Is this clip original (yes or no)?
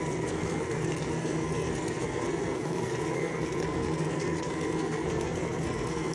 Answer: no